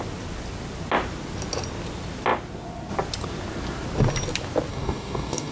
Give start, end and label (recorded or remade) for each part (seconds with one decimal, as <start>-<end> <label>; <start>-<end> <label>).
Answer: 0.0-4.7 recorded; 4.7-5.5 remade